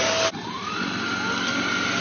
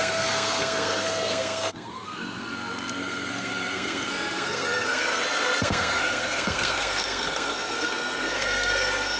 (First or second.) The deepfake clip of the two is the second